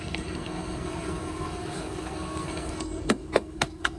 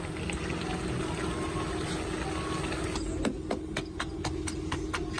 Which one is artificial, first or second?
first